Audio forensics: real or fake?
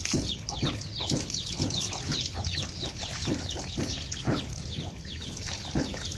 fake